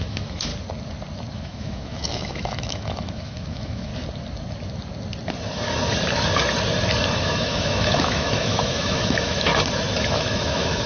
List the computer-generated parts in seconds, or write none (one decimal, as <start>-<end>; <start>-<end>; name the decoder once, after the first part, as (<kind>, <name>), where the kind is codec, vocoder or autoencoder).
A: 0.0-0.5 (autoencoder, DAC-VAE); 1.3-3.9; 7.1-9.5; 10.0-10.9